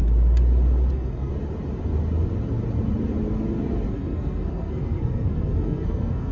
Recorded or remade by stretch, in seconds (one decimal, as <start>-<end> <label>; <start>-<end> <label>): 0.0-0.9 recorded; 0.9-1.3 remade; 1.3-3.9 recorded; 3.9-6.3 remade